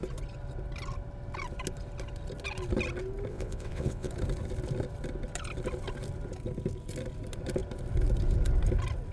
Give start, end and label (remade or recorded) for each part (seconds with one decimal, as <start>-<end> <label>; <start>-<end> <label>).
0.0-3.3 recorded; 3.3-4.1 remade; 4.1-9.1 recorded